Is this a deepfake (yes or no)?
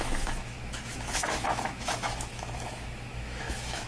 yes